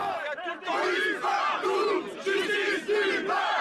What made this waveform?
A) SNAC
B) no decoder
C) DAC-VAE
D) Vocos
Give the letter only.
B